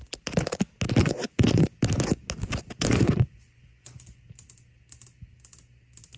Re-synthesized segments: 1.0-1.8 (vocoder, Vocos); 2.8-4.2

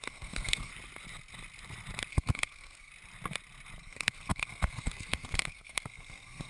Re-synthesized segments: 0.0-0.7 (codec, SNAC); 2.1-2.9; 3.8-6.5

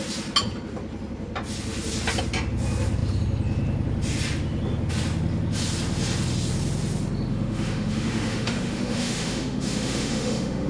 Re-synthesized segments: 7.3-10.7 (autoencoder, DAC-VAE)

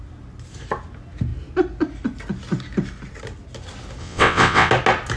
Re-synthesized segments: 4.0-4.7 (vocoder, WaveNeXt)

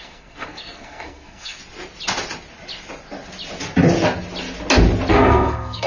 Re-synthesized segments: 0.0-1.6 (codec, SNAC); 5.1-5.9